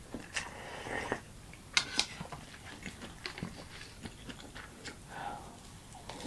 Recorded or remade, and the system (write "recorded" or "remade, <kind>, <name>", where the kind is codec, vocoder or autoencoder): recorded